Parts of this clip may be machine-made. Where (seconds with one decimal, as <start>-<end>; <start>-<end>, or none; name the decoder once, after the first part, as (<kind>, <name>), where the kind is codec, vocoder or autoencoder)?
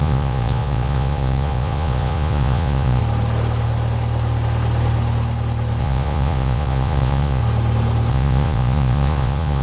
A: 0.0-3.0 (vocoder, Vocos); 5.8-7.4; 8.1-9.6